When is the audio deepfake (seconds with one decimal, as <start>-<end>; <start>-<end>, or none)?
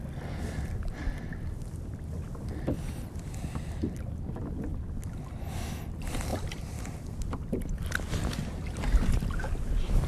6.3-7.1